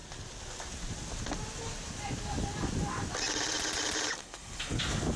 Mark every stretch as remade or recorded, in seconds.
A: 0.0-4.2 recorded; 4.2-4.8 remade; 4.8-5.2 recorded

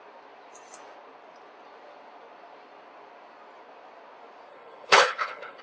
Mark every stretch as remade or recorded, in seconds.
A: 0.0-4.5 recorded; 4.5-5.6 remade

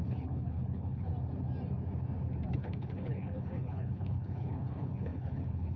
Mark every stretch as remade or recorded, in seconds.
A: 0.0-1.1 remade; 1.1-2.5 recorded; 2.5-5.8 remade

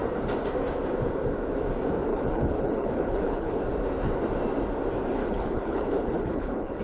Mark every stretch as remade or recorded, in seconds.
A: 0.0-2.1 recorded; 2.1-3.6 remade; 3.6-5.2 recorded; 5.2-6.8 remade

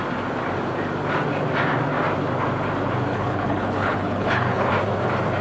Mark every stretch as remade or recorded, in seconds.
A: 0.0-3.1 recorded; 3.1-4.7 remade; 4.7-5.4 recorded

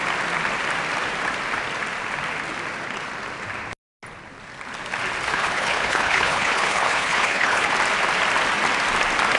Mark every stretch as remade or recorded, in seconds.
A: 0.0-5.3 recorded; 5.3-7.7 remade; 7.7-9.4 recorded

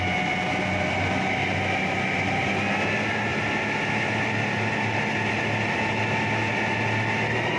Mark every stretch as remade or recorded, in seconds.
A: 0.0-7.6 recorded

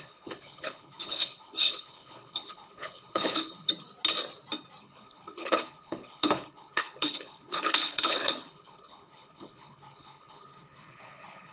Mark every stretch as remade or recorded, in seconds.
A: 0.0-3.7 remade; 3.7-4.8 recorded; 4.8-11.5 remade